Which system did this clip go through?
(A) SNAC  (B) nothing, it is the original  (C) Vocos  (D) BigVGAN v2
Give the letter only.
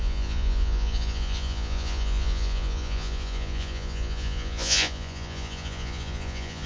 C